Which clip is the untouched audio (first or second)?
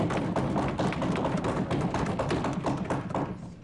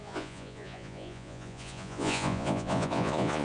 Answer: first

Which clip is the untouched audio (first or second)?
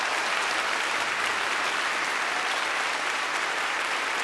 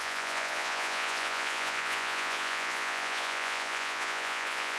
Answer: first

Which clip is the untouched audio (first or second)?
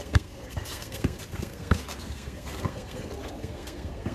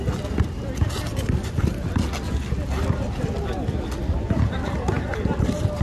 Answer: second